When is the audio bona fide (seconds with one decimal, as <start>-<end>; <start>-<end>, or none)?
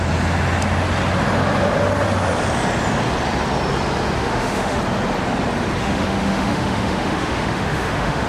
0.0-4.2; 4.8-5.8